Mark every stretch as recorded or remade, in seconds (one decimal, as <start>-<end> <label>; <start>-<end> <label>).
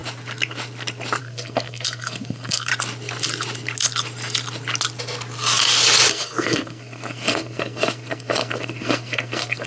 0.0-1.2 recorded; 1.2-2.7 remade; 2.7-6.1 recorded; 6.1-9.7 remade